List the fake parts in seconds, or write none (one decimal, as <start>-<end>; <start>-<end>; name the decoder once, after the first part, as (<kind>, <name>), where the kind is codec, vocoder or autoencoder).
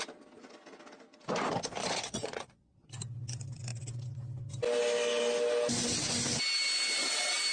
1.8-2.9 (vocoder, Vocos)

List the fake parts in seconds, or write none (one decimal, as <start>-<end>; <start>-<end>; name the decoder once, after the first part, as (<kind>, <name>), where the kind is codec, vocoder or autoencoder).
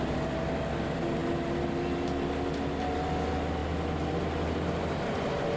none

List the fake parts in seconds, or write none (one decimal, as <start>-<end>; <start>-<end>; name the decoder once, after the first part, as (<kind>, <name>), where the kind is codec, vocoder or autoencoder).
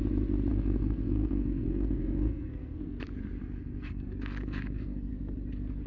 0.5-3.0 (codec, SNAC); 3.4-5.1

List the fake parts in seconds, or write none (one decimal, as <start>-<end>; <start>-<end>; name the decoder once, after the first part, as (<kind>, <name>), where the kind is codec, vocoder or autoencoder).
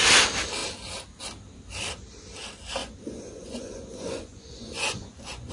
2.8-5.5 (vocoder, Vocos)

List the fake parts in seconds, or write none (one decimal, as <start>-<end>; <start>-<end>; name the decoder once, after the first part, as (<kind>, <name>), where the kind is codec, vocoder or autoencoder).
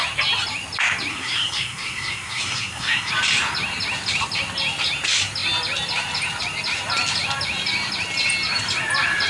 1.1-3.1 (codec, SNAC)